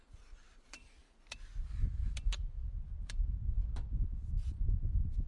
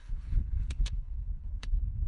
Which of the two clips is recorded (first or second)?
first